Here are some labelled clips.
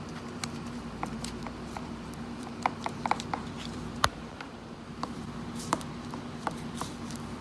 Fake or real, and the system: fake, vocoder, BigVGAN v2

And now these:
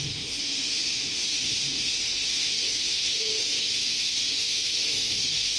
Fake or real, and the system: fake, autoencoder, DAC-VAE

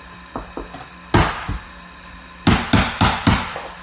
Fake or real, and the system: real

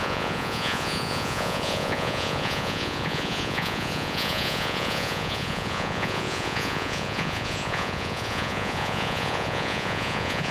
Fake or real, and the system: fake, vocoder, Vocos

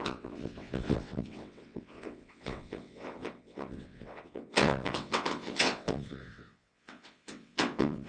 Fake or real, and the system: fake, vocoder, WaveNeXt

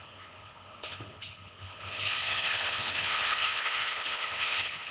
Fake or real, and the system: fake, codec, HILCodec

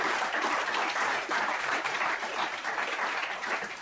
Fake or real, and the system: fake, vocoder, BigVGAN v2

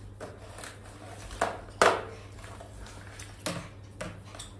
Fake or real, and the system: real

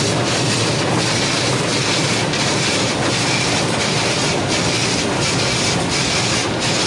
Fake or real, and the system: real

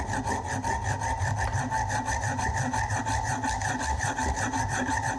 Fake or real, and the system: real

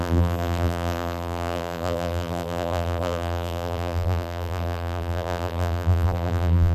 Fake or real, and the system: fake, vocoder, BigVGAN v2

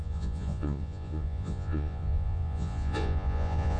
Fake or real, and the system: fake, vocoder, Vocos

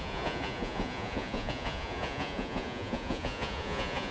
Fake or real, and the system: fake, vocoder, Vocos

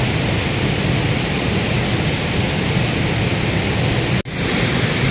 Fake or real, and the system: real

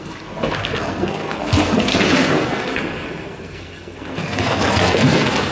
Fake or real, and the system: fake, codec, SNAC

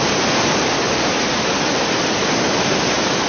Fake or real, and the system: real